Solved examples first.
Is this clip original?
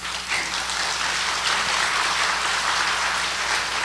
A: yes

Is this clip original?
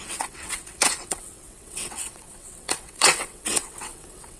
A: no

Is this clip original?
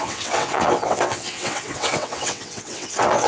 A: no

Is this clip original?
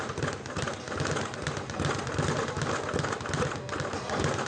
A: yes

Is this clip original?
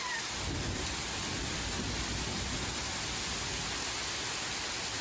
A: yes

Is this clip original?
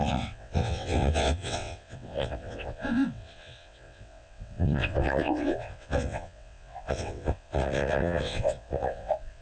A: no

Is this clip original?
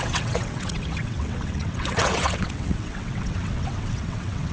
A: no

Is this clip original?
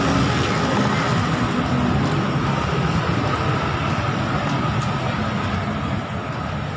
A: yes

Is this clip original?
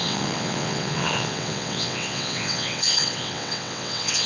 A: no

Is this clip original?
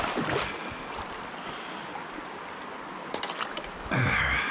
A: yes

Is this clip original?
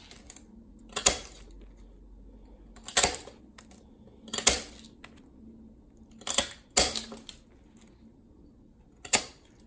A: yes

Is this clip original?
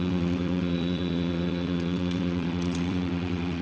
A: no